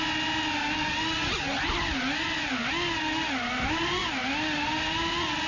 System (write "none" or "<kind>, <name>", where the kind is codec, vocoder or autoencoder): none